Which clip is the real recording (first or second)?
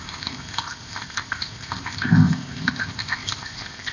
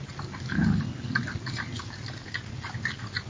second